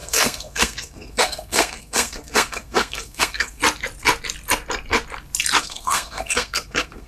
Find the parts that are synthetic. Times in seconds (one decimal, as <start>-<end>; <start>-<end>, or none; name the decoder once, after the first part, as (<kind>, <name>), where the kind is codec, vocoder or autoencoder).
0.0-3.6 (codec, SNAC); 5.6-7.1